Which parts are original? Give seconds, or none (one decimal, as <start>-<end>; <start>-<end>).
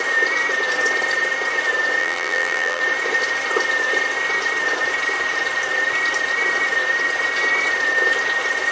0.0-2.0; 2.8-8.7